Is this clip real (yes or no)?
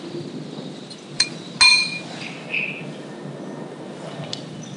yes